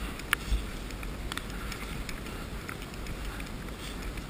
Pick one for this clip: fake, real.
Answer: real